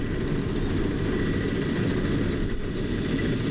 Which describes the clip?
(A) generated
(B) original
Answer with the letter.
B